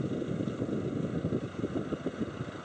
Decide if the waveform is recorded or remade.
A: recorded